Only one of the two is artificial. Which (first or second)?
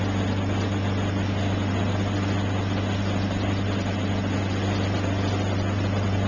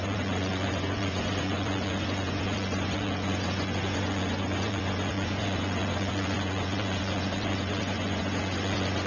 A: second